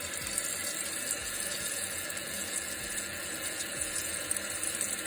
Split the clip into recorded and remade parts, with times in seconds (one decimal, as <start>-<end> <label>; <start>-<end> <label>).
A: 0.0-1.2 recorded; 1.2-4.3 remade; 4.3-5.1 recorded